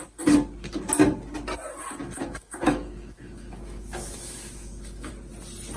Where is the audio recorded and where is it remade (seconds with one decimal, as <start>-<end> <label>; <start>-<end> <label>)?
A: 0.0-2.0 recorded; 2.0-5.1 remade; 5.1-5.8 recorded